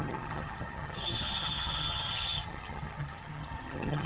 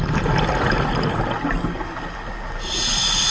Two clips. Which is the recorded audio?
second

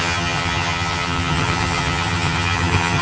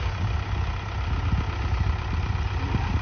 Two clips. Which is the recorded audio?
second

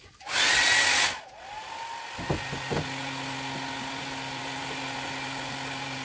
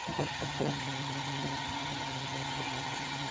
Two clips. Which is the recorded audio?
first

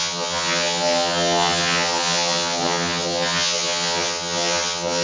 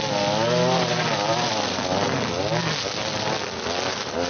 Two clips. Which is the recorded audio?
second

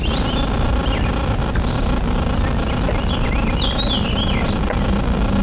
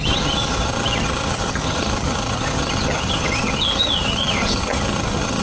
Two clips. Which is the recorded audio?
first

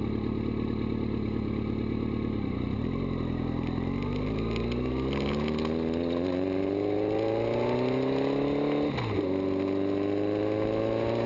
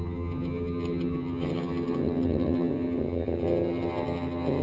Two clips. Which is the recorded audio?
first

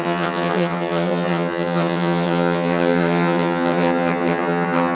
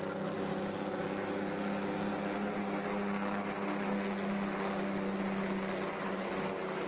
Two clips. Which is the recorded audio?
second